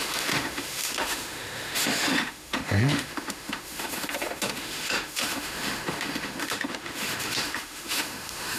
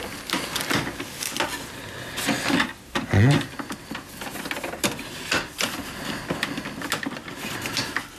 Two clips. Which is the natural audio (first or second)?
second